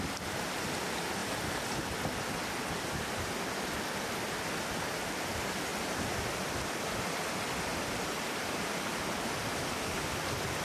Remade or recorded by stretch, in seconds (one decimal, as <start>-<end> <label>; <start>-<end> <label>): 0.0-1.2 recorded; 1.2-1.8 remade; 1.8-7.7 recorded; 7.7-9.0 remade; 9.0-10.6 recorded